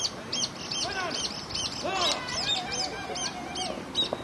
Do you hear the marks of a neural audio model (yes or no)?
no